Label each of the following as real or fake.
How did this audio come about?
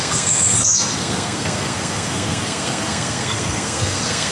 fake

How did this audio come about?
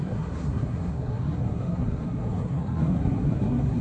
fake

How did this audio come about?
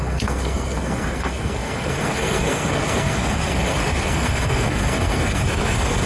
fake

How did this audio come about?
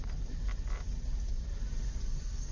real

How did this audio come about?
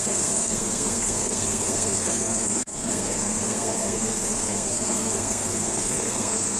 fake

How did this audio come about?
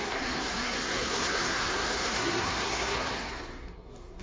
fake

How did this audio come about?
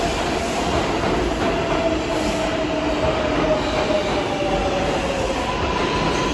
real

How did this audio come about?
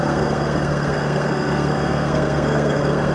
fake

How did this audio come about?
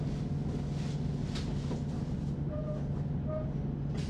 real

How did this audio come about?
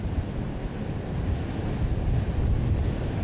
real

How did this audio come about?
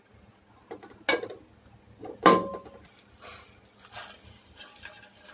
real